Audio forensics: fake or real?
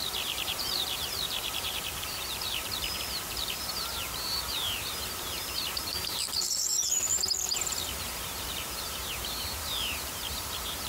fake